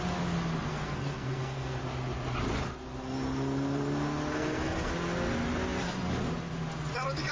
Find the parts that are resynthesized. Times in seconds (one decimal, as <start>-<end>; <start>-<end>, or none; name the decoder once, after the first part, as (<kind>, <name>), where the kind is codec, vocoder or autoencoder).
0.7-1.8 (codec, SNAC); 4.3-4.9